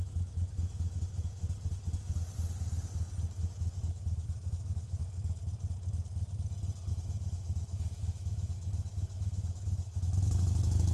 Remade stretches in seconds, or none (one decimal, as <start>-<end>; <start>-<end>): 0.0-1.4; 3.4-5.0; 6.9-10.9